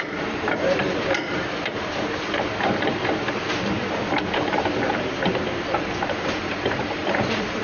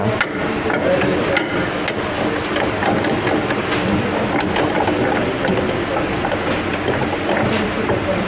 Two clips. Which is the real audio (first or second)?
second